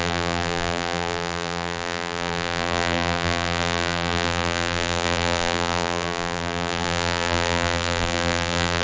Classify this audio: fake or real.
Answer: fake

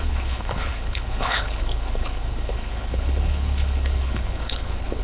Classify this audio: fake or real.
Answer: fake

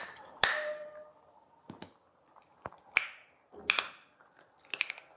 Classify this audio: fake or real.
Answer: real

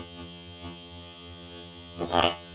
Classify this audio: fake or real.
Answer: fake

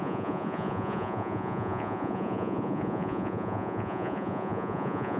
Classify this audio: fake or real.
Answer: fake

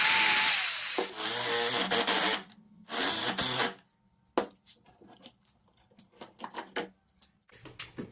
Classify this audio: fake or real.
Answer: real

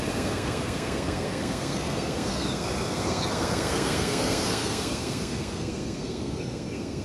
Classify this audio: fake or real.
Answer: fake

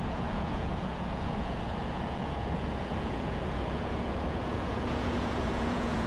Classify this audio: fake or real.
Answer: fake